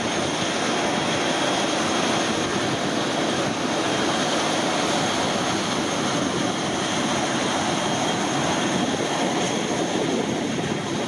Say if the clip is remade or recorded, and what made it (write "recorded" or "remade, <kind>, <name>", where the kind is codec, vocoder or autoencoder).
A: recorded